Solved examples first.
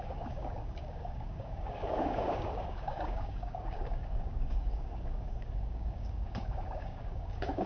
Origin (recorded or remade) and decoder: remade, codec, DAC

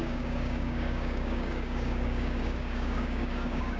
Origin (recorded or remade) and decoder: remade, codec, DAC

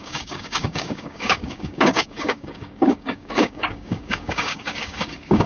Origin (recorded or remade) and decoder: remade, codec, DAC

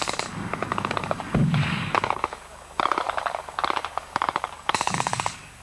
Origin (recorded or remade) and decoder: remade, codec, DAC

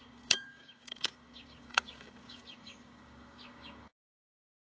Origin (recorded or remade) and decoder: remade, codec, DAC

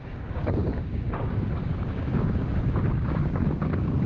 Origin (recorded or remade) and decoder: remade, codec, DAC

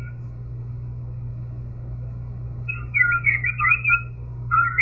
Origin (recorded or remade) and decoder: remade, codec, DAC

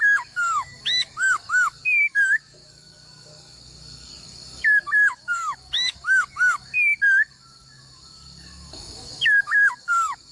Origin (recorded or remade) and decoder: remade, codec, DAC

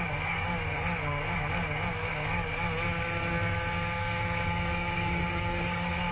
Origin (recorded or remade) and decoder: remade, codec, DAC